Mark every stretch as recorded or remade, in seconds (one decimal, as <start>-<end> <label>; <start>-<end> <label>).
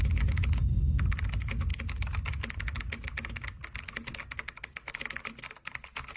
0.0-6.2 recorded